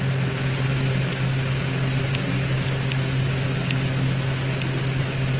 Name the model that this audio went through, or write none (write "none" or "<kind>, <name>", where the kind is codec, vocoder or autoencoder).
none